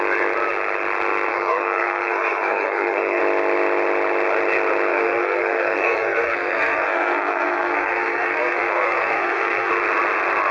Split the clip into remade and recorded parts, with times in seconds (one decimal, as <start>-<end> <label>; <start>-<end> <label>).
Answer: 0.0-1.3 recorded; 1.3-3.2 remade; 3.2-4.9 recorded; 4.9-9.7 remade; 9.7-10.5 recorded

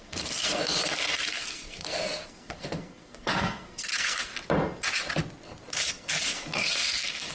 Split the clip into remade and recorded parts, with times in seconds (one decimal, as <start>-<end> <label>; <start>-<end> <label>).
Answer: 0.0-4.3 remade; 4.3-5.7 recorded; 5.7-7.3 remade

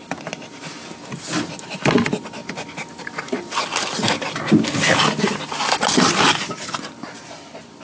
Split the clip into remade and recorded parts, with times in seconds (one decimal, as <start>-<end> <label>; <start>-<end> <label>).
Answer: 0.0-7.8 recorded

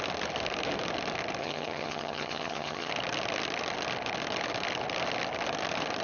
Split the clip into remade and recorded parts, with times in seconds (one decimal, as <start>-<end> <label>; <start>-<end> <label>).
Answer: 0.0-1.4 recorded; 1.4-2.9 remade; 2.9-6.0 recorded

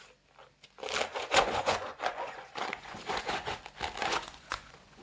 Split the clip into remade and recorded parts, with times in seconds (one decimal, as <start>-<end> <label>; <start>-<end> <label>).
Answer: 0.0-1.1 recorded; 1.1-3.6 remade; 3.6-4.0 recorded; 4.0-5.0 remade